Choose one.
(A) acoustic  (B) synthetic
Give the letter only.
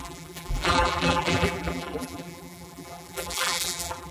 B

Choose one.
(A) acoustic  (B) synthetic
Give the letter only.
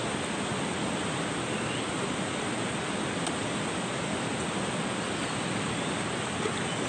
A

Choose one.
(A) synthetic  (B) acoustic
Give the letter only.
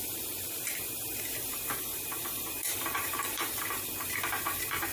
A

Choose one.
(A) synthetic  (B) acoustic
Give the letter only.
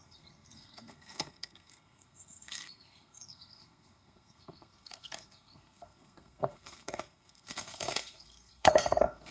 A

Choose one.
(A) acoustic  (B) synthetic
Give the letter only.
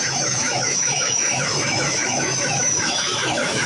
B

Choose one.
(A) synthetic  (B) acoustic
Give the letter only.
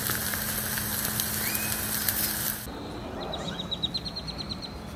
B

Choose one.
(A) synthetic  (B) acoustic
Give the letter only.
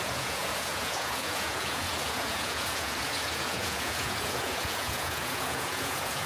A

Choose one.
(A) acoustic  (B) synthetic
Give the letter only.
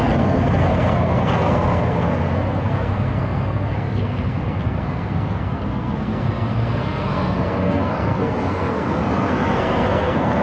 B